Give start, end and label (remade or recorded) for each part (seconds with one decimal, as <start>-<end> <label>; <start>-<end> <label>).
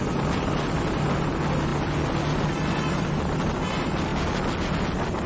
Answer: 0.0-5.3 recorded